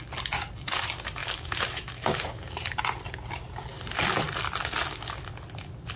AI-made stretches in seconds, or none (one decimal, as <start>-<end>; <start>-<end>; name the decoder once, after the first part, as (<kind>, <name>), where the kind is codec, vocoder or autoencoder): 1.2-2.3 (autoencoder, DAC-VAE)